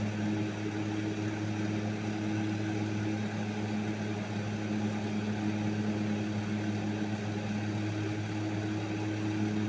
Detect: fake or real real